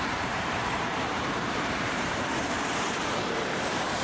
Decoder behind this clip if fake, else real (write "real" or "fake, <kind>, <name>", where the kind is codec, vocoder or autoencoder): fake, vocoder, BigVGAN v2